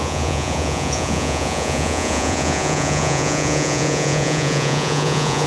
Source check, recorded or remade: remade